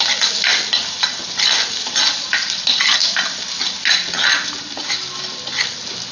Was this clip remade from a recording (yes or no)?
no